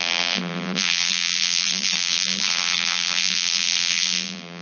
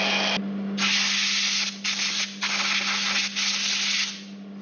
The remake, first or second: first